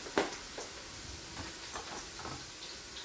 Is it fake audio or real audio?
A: real